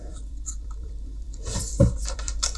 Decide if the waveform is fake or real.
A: fake